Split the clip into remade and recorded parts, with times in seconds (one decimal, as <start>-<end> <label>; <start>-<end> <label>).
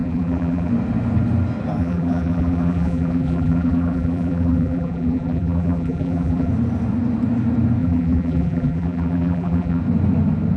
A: 0.0-0.7 remade; 0.7-1.8 recorded; 1.8-6.5 remade; 6.5-7.8 recorded; 7.8-9.8 remade; 9.8-10.6 recorded